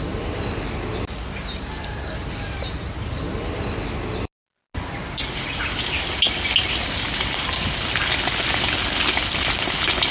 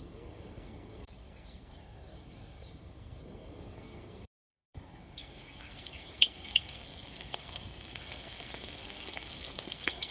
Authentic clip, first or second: first